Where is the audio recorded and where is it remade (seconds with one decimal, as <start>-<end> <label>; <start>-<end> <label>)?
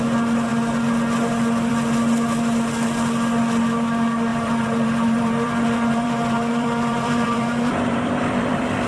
0.0-4.3 recorded; 4.3-8.9 remade